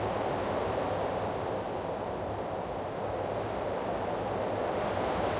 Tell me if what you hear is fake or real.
real